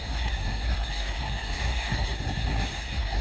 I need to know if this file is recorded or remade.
remade